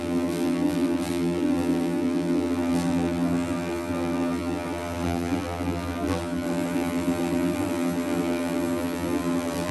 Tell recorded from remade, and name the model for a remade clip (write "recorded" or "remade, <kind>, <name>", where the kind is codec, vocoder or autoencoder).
remade, vocoder, BigVGAN v2